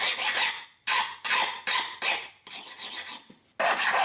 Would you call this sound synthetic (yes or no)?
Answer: no